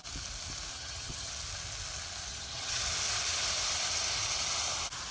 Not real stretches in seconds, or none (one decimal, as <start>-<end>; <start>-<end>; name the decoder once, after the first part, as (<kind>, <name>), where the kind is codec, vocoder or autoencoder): 0.7-1.3 (vocoder, HiFi-GAN); 2.3-2.8